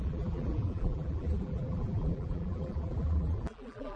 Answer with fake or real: fake